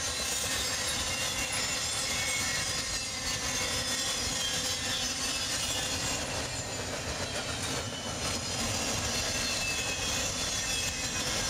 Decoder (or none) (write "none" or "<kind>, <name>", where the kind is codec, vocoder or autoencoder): none